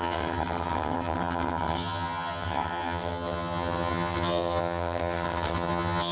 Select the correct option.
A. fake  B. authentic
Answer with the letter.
A